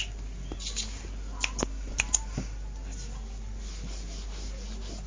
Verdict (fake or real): real